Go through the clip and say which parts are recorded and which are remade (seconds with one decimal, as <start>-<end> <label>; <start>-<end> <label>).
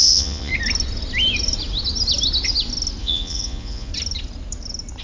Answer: 0.0-0.5 remade; 0.5-3.0 recorded; 3.0-3.9 remade; 3.9-5.0 recorded